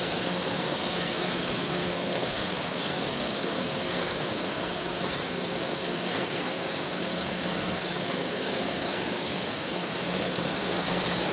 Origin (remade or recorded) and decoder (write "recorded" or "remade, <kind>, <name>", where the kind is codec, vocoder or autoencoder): remade, codec, SNAC